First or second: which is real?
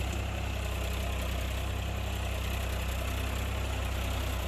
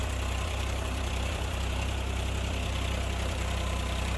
first